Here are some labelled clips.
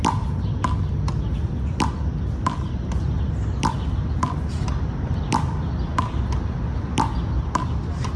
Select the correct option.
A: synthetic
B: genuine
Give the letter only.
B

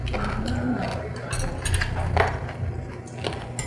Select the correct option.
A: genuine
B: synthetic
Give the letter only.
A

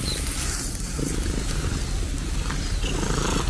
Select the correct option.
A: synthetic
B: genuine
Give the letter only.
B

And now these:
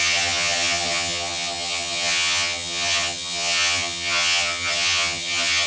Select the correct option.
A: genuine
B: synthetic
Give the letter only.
B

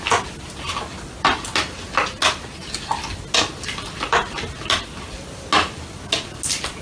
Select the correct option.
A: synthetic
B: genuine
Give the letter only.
B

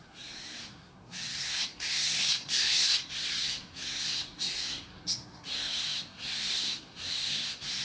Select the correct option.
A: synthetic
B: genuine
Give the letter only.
A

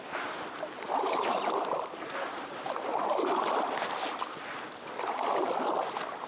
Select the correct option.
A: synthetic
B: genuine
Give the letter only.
B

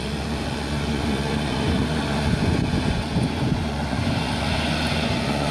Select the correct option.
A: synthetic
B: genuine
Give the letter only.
A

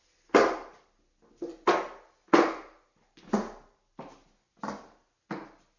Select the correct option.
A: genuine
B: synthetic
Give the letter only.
A